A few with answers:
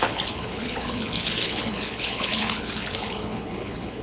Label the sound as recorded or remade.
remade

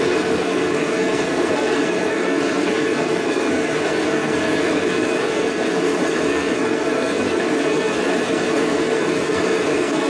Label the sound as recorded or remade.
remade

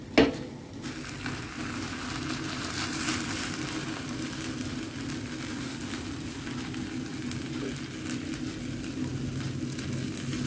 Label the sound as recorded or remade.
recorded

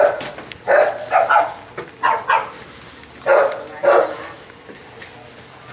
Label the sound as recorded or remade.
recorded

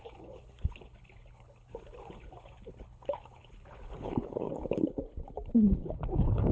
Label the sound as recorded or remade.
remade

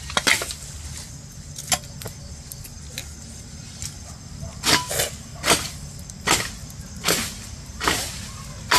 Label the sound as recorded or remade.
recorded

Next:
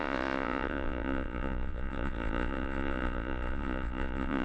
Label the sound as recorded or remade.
remade